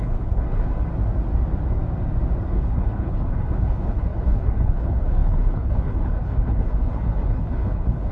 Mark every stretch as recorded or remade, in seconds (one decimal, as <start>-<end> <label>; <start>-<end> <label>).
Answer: 0.0-0.7 remade; 0.7-2.5 recorded; 2.5-8.1 remade